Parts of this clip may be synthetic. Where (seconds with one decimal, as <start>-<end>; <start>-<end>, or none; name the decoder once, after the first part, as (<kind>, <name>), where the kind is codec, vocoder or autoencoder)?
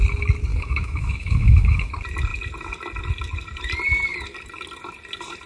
0.5-1.9 (autoencoder, DAC-VAE)